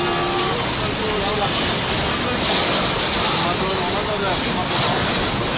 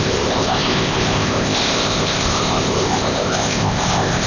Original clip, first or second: first